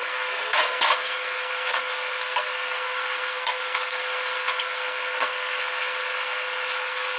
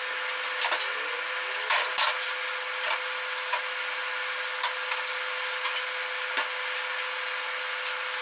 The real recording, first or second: second